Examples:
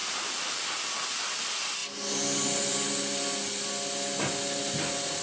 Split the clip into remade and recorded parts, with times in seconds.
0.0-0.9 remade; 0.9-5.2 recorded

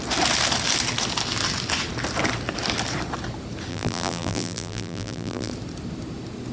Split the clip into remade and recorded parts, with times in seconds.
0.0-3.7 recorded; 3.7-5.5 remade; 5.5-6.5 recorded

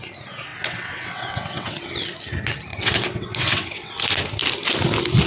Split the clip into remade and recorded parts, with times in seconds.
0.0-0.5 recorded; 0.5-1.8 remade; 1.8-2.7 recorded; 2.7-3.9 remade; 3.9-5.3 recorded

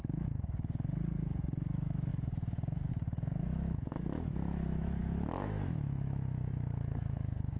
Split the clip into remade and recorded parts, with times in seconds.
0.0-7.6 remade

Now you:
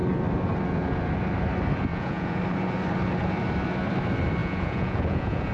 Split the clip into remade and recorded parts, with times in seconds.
0.0-1.9 recorded; 1.9-2.4 remade; 2.4-4.4 recorded; 4.4-5.5 remade

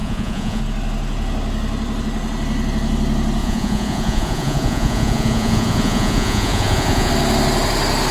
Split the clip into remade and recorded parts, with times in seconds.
0.0-0.6 remade; 0.6-3.4 recorded; 3.4-7.1 remade; 7.1-8.1 recorded

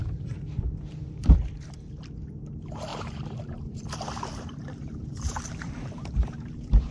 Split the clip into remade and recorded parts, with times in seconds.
0.0-0.5 remade; 0.5-2.9 recorded; 2.9-6.9 remade

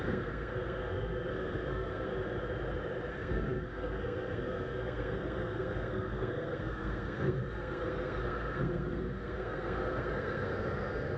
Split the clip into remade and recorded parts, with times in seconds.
0.0-2.1 remade; 2.1-3.1 recorded; 3.1-11.2 remade